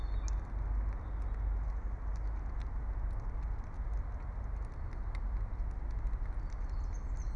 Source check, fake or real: real